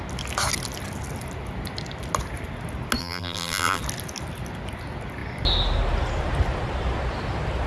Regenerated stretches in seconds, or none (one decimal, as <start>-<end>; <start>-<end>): 3.0-3.8

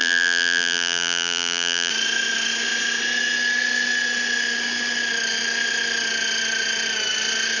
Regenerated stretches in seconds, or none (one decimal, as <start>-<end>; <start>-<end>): 0.0-1.9

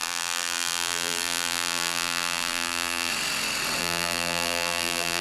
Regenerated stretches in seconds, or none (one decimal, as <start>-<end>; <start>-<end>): 0.0-3.1; 3.8-5.2

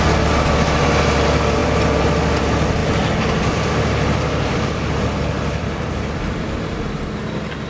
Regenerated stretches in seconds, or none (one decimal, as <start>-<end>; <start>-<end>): 2.8-6.9

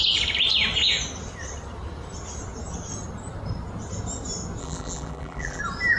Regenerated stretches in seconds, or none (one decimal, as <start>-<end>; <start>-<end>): 4.6-5.6